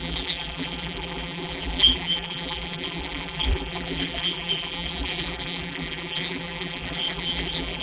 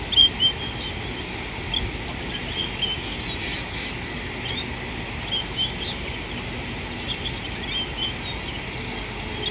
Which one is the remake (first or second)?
first